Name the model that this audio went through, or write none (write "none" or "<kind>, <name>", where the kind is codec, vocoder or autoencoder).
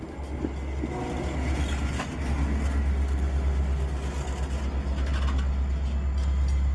none